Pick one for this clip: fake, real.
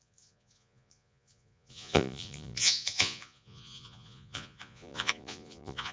fake